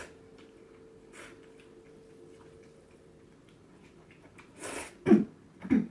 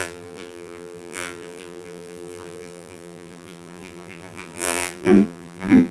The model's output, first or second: second